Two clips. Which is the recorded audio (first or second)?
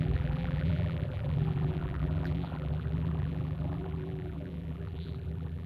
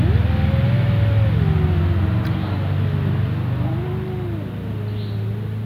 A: second